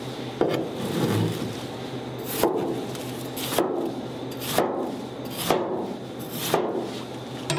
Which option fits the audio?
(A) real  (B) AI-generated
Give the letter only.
A